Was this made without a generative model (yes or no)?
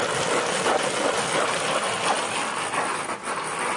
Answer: yes